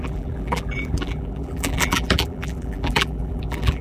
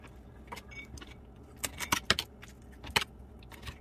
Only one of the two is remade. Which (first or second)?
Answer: first